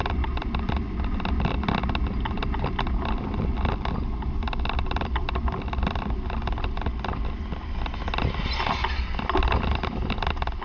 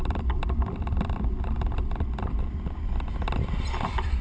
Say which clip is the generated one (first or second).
second